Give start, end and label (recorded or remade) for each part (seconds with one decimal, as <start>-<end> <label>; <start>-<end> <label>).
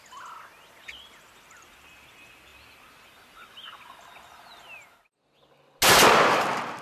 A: 0.0-6.8 recorded